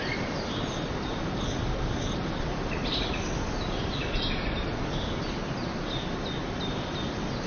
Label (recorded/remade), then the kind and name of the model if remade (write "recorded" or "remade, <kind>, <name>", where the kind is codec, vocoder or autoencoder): recorded